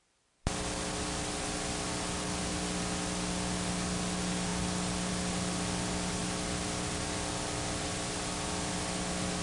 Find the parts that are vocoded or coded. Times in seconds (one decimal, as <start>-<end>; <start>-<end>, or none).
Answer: none